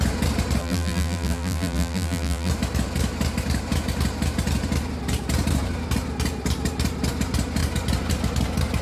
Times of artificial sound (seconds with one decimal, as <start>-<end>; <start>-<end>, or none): 0.6-2.5